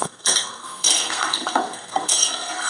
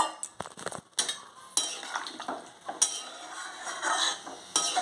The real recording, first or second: second